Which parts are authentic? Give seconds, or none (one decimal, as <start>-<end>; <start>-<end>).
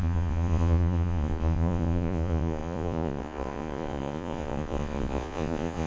none